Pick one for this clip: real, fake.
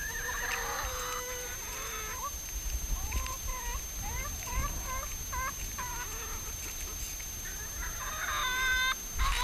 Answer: real